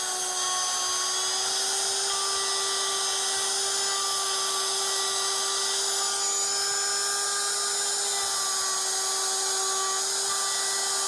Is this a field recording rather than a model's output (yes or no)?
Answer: yes